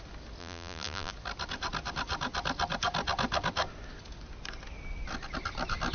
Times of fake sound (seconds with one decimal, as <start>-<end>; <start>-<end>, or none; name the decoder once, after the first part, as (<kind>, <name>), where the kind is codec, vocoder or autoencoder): 0.4-1.1 (vocoder, BigVGAN v2)